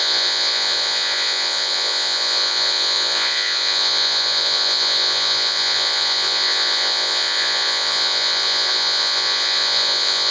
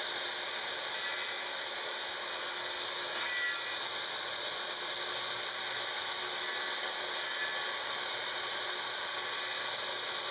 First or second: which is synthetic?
first